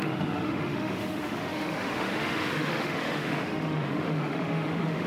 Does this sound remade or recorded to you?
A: remade